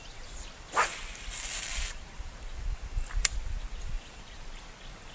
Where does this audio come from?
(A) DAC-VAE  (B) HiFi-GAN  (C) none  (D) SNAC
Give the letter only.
C